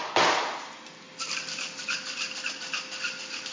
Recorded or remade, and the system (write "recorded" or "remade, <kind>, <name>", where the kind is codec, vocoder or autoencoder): recorded